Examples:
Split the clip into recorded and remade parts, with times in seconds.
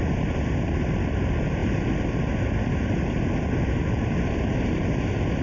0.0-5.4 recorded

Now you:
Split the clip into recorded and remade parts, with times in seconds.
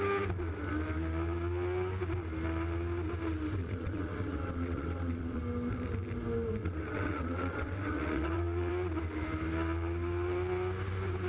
0.0-3.6 recorded; 3.6-5.4 remade; 5.4-6.6 recorded; 6.6-8.7 remade; 8.7-11.3 recorded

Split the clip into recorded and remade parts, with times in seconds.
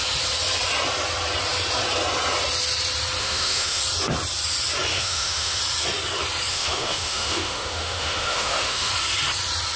0.0-3.2 recorded; 3.2-3.8 remade; 3.8-4.9 recorded; 4.9-5.6 remade; 5.6-6.5 recorded; 6.5-8.9 remade; 8.9-9.8 recorded